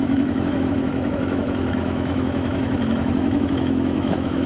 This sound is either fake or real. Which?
fake